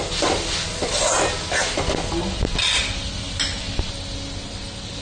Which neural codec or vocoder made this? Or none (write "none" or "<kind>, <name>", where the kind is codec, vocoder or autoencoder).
none